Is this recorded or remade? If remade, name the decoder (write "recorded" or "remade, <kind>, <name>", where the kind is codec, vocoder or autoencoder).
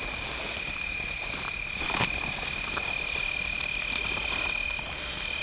recorded